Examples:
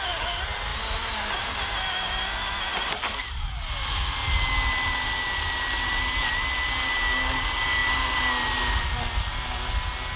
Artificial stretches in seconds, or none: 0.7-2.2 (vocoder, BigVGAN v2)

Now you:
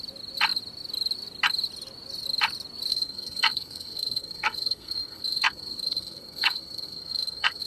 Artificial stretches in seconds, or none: 2.9-7.7 (codec, SNAC)